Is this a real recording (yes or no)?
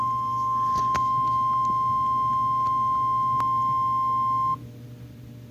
yes